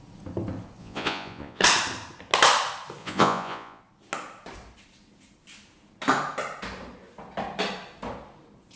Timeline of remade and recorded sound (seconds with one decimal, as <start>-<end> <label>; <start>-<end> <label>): 0.0-0.8 recorded; 0.8-1.6 remade; 1.6-3.0 recorded; 3.0-3.8 remade; 3.8-8.8 recorded